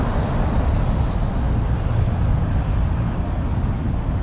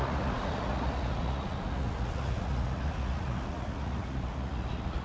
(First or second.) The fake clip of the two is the second